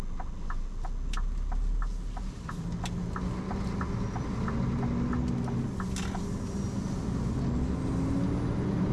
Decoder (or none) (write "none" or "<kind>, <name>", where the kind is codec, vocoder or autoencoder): none